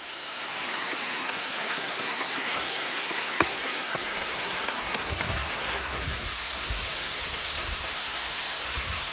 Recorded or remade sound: remade